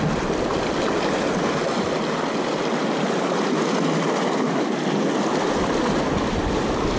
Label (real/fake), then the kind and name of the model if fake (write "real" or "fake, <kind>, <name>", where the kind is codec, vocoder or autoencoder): real